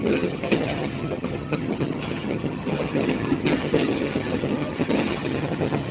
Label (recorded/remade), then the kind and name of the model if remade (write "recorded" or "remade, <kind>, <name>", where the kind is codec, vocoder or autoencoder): remade, vocoder, HiFi-GAN